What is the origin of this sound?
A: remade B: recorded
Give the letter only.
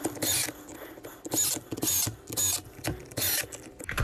B